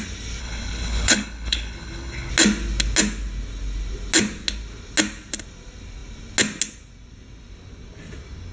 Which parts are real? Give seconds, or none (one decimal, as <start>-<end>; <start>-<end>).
0.0-0.4; 2.3-8.5